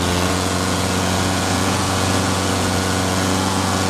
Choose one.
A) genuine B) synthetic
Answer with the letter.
B